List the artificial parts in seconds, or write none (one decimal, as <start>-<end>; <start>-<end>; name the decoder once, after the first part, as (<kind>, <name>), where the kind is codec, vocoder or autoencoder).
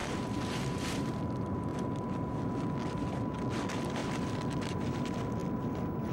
0.0-1.2 (vocoder, BigVGAN v2)